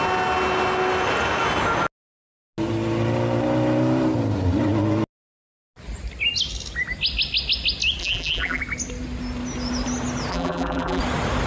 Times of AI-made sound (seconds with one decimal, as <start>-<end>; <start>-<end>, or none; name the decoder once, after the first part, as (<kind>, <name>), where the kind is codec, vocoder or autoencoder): 8.0-8.6 (vocoder, BigVGAN v2); 10.3-11.0